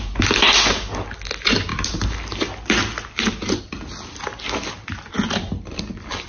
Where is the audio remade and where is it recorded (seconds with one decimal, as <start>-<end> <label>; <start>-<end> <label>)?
0.0-6.3 recorded